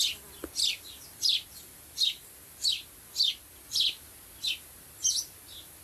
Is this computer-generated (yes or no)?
no